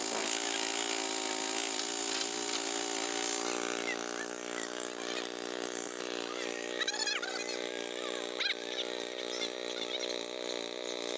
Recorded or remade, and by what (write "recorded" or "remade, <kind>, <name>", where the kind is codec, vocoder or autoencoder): recorded